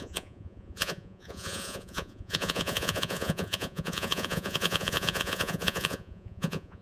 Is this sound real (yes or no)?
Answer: no